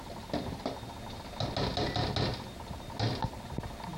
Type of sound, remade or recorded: recorded